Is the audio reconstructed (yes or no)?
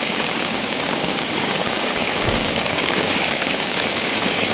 yes